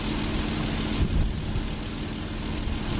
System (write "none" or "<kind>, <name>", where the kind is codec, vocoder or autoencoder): none